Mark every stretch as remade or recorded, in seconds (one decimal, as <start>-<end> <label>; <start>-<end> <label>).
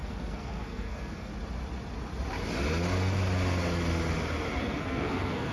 0.0-1.3 remade; 1.3-4.6 recorded; 4.6-5.5 remade